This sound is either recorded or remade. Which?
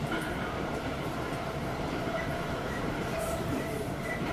remade